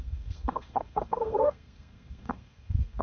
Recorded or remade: remade